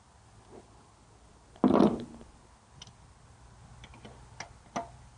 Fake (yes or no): no